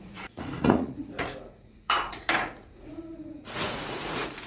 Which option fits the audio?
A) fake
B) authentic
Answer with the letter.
A